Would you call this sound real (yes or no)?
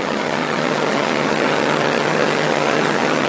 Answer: no